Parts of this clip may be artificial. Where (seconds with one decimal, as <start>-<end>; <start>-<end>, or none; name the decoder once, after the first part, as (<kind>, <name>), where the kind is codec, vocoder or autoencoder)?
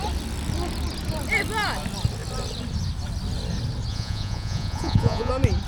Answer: 3.9-5.3 (vocoder, Vocos)